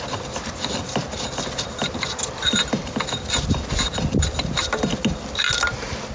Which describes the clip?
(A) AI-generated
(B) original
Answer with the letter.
B